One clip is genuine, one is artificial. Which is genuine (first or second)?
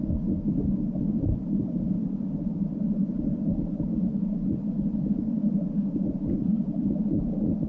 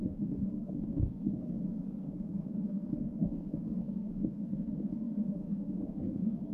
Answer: first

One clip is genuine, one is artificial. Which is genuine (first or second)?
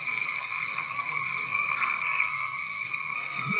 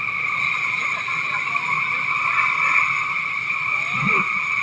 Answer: second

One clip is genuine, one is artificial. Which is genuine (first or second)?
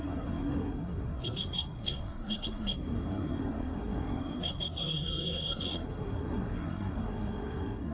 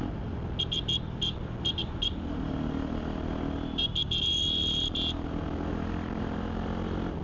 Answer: second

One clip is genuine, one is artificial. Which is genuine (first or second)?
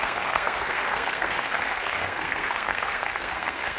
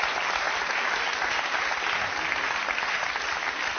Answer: second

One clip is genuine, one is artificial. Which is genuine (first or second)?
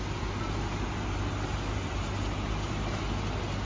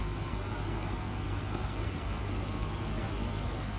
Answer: first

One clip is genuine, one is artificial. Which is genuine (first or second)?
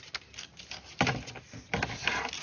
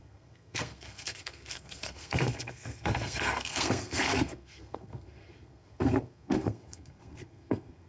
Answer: first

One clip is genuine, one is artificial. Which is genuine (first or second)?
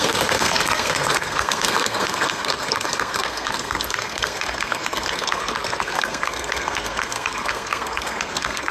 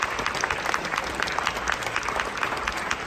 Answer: second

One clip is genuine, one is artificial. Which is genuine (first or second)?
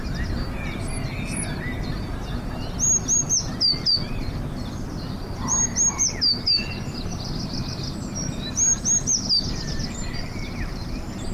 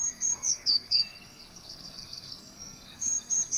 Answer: first